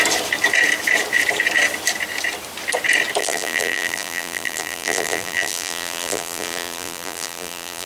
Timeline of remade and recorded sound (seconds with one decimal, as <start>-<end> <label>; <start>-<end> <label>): 0.0-3.2 recorded; 3.2-7.9 remade